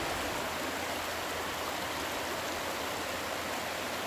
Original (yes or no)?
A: yes